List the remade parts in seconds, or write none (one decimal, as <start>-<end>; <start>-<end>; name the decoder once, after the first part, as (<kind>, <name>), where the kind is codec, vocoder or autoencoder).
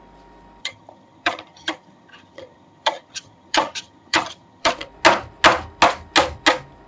0.6-4.7 (vocoder, HiFi-GAN)